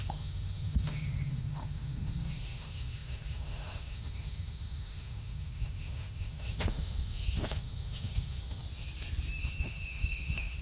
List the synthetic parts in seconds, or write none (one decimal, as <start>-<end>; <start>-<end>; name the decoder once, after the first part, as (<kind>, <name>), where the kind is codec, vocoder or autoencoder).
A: 0.0-8.6 (autoencoder, DAC-VAE); 9.4-10.6